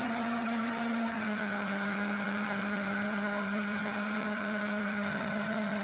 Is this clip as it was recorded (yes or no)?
no